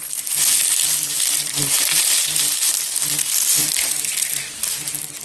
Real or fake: real